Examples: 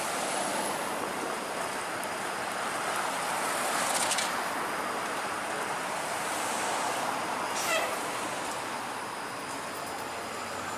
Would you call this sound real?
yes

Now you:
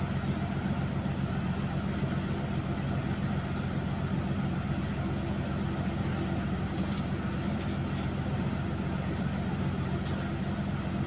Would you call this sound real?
yes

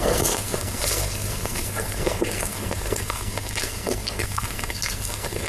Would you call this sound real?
no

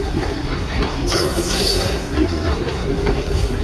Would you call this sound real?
no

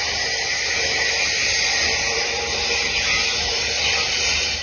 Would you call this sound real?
yes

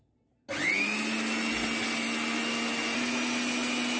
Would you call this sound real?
yes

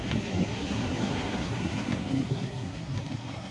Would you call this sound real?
no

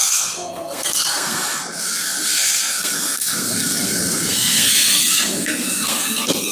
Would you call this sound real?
no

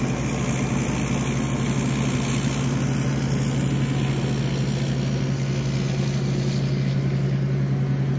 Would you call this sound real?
yes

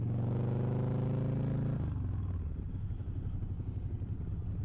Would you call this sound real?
yes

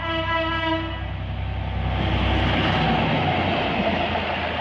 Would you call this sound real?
yes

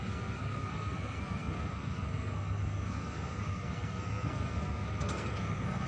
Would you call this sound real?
no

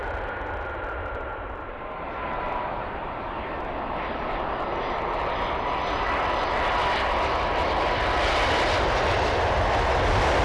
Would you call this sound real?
yes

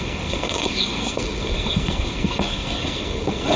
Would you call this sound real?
no